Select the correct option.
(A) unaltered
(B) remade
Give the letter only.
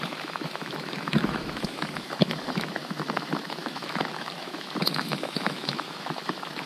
B